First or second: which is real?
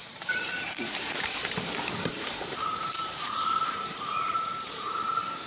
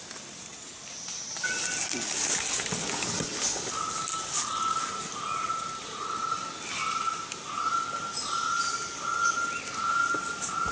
second